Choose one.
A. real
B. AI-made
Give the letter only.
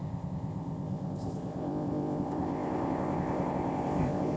B